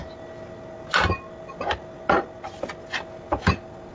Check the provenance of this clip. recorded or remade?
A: recorded